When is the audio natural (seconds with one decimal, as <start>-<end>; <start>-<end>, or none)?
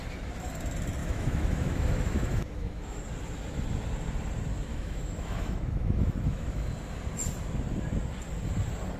0.0-1.0; 3.0-4.7; 6.7-9.0